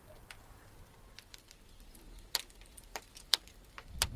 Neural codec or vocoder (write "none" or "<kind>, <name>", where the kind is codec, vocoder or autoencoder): vocoder, BigVGAN v2